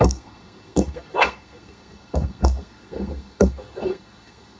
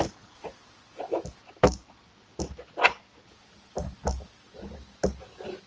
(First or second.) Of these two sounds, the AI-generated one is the first